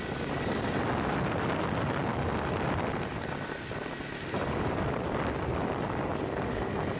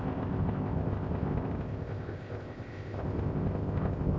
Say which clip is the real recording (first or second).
first